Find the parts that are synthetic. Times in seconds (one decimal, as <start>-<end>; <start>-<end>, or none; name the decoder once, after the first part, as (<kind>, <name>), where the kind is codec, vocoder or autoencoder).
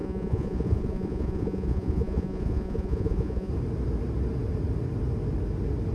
0.0-3.5 (vocoder, Vocos)